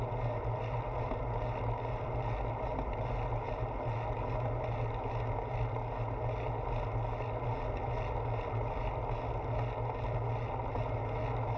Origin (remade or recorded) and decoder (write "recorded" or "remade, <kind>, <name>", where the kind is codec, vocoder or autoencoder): recorded